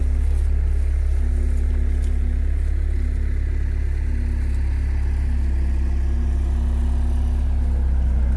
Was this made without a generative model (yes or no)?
yes